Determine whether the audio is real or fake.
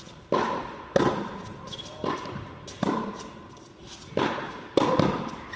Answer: real